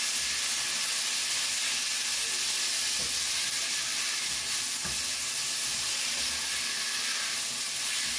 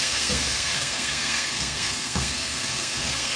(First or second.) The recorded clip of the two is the first